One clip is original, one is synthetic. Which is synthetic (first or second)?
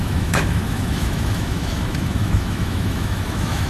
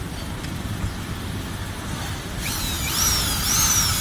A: first